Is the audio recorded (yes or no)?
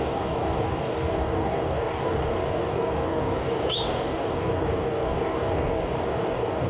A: no